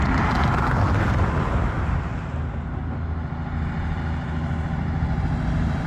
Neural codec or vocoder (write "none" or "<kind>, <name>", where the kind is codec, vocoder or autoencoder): none